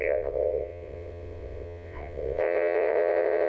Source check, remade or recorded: remade